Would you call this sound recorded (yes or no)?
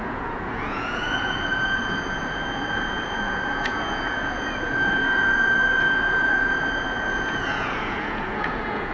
no